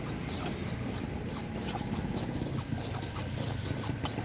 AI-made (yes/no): no